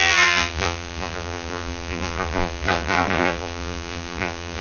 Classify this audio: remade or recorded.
remade